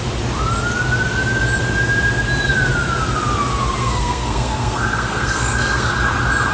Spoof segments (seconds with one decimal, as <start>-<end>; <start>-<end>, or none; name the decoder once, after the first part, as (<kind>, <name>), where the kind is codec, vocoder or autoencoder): 3.8-5.9 (codec, SNAC)